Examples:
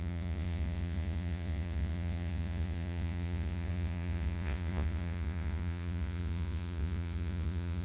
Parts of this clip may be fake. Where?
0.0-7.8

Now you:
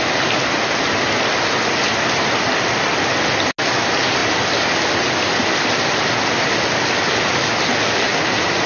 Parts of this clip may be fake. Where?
none